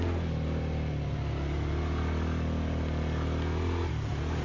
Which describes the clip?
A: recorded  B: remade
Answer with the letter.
A